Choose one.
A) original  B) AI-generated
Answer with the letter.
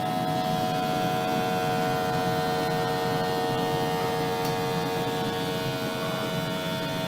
A